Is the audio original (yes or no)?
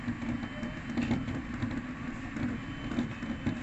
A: yes